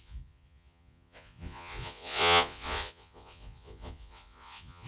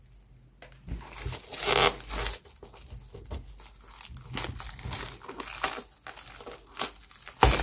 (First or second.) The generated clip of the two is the first